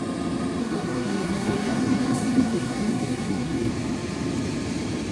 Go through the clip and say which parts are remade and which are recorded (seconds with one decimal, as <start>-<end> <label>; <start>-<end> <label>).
0.0-0.6 recorded; 0.6-3.7 remade; 3.7-5.1 recorded

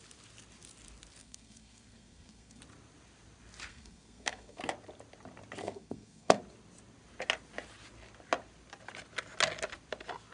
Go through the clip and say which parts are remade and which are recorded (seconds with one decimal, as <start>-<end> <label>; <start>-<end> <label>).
0.0-1.2 recorded; 1.2-2.6 remade; 2.6-3.7 recorded; 3.7-4.6 remade; 4.6-5.6 recorded; 5.6-6.4 remade; 6.4-10.3 recorded

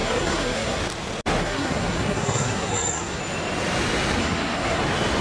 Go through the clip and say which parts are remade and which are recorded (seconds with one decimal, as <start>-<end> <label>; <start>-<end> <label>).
0.0-0.8 remade; 0.8-1.4 recorded; 1.4-3.2 remade; 3.2-4.2 recorded; 4.2-4.8 remade; 4.8-5.2 recorded

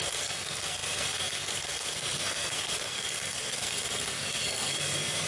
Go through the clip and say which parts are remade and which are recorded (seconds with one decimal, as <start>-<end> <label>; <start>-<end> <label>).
0.0-5.3 remade

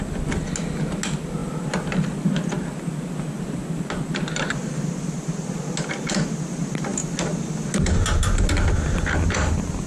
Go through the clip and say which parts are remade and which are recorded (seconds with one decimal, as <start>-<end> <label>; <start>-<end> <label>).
0.0-9.9 recorded